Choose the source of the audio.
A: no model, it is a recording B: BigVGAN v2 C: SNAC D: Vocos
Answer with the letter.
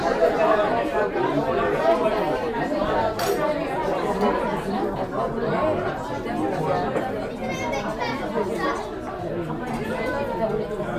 A